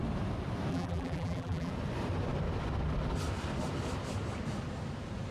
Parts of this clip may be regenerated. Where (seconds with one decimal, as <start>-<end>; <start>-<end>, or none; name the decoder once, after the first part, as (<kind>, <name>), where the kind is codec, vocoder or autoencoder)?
0.7-1.7 (vocoder, BigVGAN v2)